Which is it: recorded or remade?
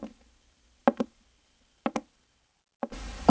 recorded